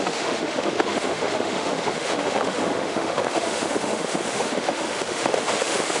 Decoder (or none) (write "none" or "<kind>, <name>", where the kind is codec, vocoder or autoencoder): autoencoder, DAC-VAE